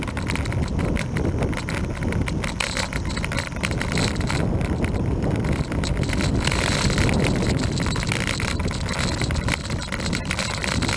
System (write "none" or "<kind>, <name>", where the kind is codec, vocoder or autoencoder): none